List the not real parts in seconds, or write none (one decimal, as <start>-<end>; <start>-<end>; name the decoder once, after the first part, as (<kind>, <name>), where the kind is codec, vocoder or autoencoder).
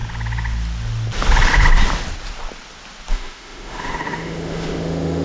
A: 3.1-5.2 (autoencoder, DAC-VAE)